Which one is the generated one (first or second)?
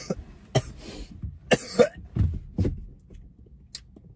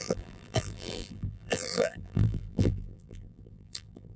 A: second